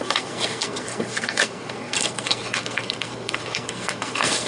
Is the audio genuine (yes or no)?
no